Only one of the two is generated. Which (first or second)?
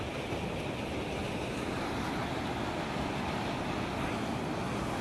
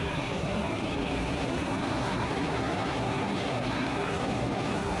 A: second